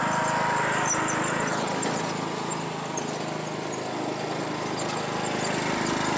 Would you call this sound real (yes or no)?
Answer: yes